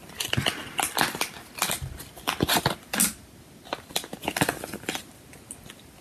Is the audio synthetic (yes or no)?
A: no